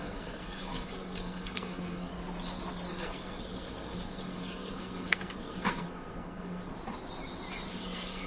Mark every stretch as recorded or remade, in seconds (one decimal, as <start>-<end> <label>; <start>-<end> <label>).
0.0-2.1 remade; 2.1-2.9 recorded; 2.9-6.7 remade; 6.7-7.7 recorded; 7.7-8.3 remade